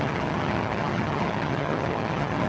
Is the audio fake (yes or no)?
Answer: yes